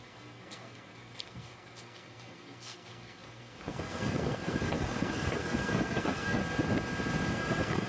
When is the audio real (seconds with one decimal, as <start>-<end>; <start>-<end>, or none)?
6.4-7.3